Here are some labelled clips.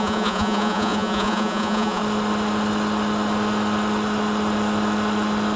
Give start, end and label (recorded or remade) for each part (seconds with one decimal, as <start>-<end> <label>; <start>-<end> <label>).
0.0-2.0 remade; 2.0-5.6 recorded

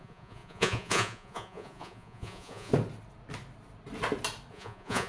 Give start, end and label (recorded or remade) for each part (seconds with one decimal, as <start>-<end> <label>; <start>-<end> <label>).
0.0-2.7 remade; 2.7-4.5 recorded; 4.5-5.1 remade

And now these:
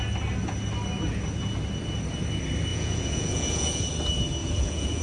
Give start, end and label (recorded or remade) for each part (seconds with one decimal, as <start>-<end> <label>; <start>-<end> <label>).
0.0-2.7 recorded; 2.7-3.8 remade; 3.8-4.4 recorded; 4.4-5.0 remade

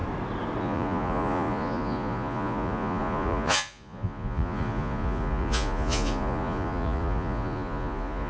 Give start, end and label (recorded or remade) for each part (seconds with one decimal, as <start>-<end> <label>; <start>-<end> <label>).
0.0-0.6 recorded; 0.6-8.3 remade